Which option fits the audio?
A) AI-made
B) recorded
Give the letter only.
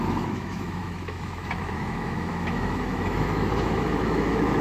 A